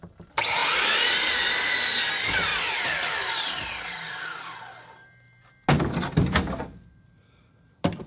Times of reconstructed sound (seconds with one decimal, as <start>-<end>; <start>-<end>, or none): none